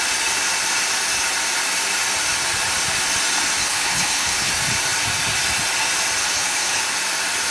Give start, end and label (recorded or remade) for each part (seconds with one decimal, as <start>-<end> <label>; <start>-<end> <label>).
0.0-3.6 recorded; 3.6-4.5 remade; 4.5-6.2 recorded; 6.2-6.8 remade; 6.8-7.5 recorded